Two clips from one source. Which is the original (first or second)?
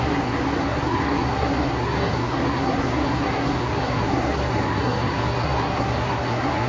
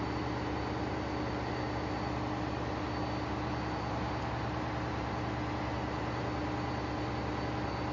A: second